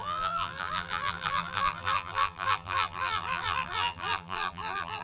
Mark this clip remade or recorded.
remade